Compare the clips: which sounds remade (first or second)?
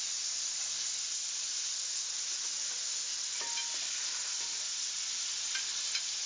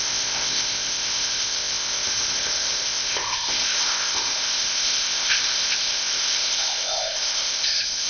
second